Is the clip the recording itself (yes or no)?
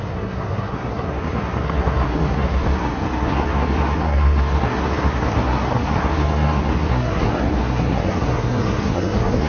no